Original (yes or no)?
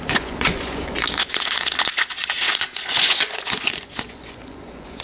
no